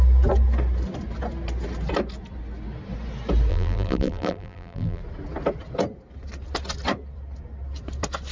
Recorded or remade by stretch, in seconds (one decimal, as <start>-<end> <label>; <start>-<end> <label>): 0.0-3.5 recorded; 3.5-5.0 remade; 5.0-8.3 recorded